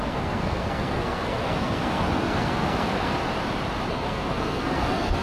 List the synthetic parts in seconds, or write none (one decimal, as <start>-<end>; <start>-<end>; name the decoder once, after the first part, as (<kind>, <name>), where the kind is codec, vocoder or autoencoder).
0.0-3.2 (codec, SNAC); 3.9-5.2